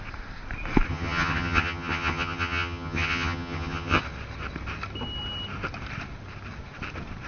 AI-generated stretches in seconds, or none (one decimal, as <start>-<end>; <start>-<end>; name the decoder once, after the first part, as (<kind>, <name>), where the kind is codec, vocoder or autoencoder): 0.9-4.0 (vocoder, HiFi-GAN)

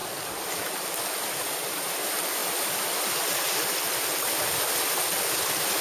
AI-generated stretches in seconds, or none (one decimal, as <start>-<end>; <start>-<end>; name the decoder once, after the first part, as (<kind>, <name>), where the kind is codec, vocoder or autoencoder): none